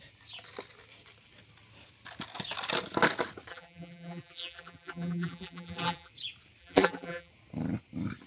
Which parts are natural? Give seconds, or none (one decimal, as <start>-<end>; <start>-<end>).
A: 0.0-3.5; 6.1-6.6; 7.3-8.3